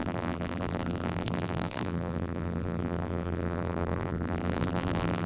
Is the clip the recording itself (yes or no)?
no